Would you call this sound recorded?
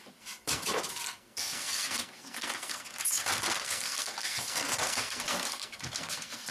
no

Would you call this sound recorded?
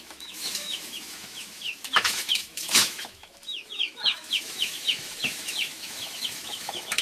no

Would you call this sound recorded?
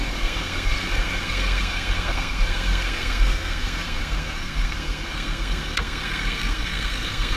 no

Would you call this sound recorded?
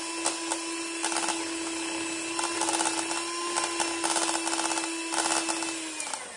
yes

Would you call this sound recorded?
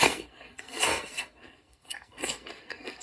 no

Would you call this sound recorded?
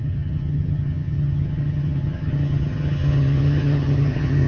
no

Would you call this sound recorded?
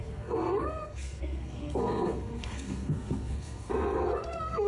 no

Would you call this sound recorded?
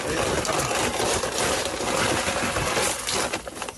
yes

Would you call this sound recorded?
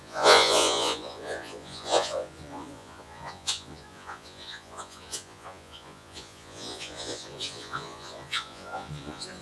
no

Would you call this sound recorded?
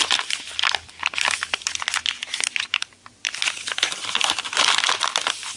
no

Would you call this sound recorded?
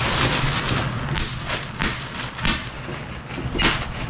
yes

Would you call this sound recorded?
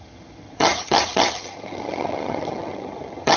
no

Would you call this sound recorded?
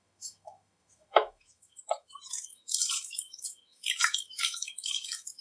no